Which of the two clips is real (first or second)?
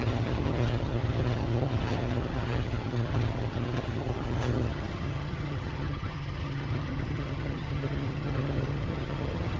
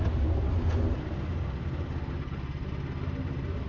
second